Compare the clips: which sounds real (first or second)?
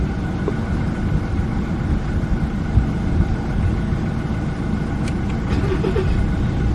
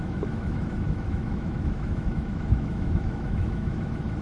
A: first